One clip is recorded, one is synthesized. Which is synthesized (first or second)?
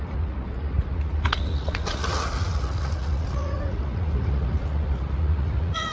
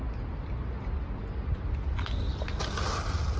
first